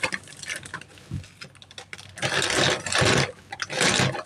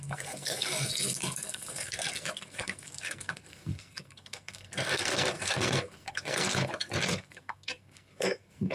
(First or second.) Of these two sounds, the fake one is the second